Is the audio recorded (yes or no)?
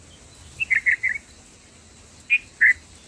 yes